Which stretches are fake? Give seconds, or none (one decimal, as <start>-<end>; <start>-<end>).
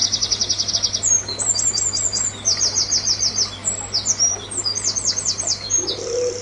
0.0-0.7